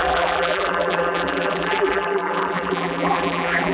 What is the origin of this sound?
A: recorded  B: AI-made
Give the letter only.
B